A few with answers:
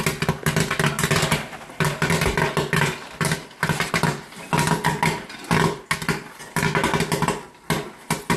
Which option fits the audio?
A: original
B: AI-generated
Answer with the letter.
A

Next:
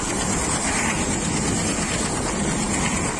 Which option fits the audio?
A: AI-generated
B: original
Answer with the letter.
B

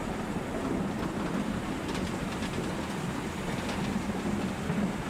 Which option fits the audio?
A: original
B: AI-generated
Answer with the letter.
A